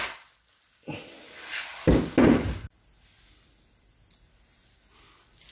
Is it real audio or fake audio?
real